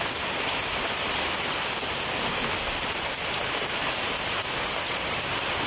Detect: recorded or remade recorded